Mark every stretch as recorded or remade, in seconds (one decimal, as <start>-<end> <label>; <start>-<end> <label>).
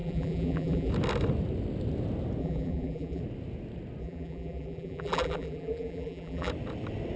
0.0-0.9 remade; 0.9-2.4 recorded; 2.4-3.2 remade; 3.2-4.0 recorded; 4.0-6.5 remade; 6.5-7.2 recorded